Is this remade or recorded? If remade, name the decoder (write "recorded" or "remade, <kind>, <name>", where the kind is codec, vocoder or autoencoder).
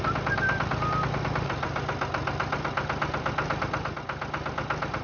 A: recorded